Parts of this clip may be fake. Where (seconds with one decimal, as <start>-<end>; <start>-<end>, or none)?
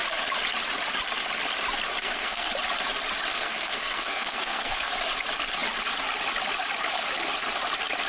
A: 2.0-2.5; 3.3-4.9